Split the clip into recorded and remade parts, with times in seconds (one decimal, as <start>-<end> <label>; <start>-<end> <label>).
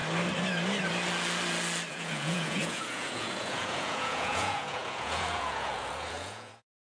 0.0-1.9 recorded; 1.9-7.0 remade